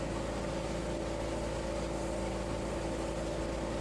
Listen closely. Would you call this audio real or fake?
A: real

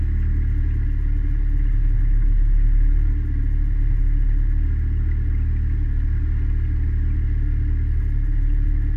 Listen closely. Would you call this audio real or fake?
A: real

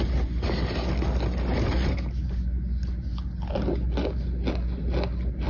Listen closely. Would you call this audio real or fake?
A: real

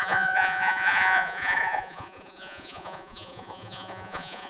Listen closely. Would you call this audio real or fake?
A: fake